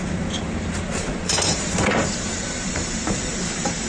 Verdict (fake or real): fake